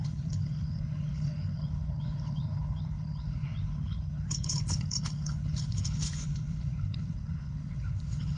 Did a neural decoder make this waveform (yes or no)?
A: yes